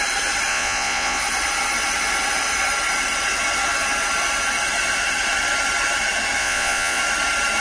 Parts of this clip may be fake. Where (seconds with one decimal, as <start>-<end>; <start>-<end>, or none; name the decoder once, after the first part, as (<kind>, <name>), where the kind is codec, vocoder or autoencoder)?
0.5-1.2 (vocoder, Vocos); 6.4-7.0